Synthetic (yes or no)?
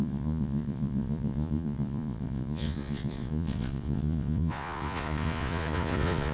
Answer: yes